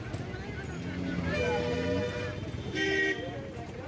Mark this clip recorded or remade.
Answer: recorded